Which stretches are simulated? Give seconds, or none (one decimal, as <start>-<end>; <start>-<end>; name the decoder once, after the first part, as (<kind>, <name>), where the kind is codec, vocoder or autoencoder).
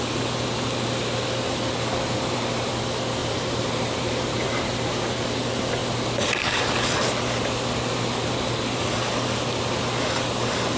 3.2-4.6 (vocoder, BigVGAN v2)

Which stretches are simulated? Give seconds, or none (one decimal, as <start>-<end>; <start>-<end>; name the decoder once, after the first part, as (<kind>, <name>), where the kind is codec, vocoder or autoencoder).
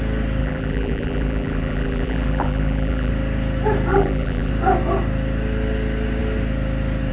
0.4-3.1 (vocoder, BigVGAN v2); 3.9-4.5